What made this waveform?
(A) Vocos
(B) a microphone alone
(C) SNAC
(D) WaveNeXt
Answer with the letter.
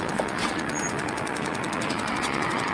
D